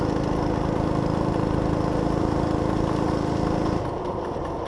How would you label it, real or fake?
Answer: real